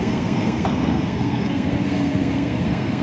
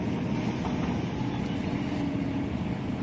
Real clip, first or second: second